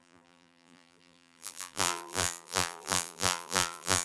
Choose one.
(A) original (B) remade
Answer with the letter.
B